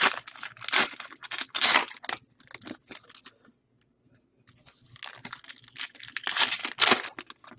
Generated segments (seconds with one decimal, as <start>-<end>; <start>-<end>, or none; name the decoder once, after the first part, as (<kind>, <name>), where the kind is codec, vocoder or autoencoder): 0.0-1.8 (vocoder, BigVGAN v2); 6.1-6.6